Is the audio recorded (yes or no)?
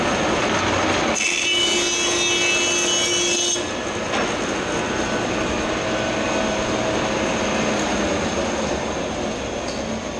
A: yes